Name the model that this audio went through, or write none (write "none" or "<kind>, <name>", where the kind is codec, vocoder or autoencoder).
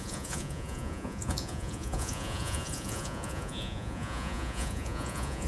vocoder, Vocos